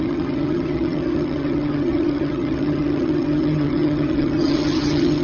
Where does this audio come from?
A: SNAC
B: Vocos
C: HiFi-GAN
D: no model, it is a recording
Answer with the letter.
C